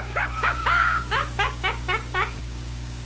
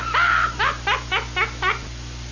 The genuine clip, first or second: second